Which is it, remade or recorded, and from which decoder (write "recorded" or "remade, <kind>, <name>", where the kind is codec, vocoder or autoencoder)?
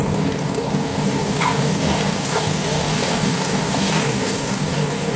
remade, codec, DAC